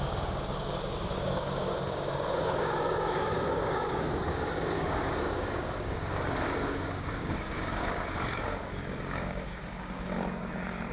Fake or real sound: fake